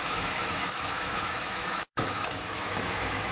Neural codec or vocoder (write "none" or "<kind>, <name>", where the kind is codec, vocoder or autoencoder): autoencoder, DAC-VAE